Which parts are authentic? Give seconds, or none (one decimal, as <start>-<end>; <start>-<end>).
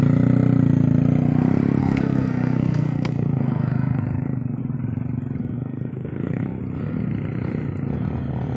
0.0-1.8; 4.6-5.4; 6.6-8.6